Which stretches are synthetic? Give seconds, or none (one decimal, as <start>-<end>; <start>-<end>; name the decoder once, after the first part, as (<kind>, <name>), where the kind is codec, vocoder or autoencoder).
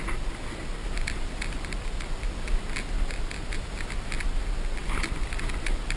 0.8-1.4 (vocoder, BigVGAN v2); 4.8-5.5